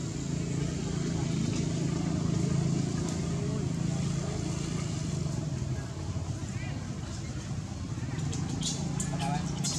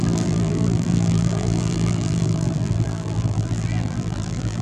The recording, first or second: first